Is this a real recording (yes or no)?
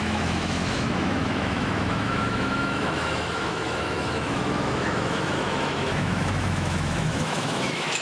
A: no